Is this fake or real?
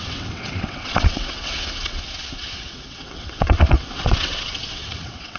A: fake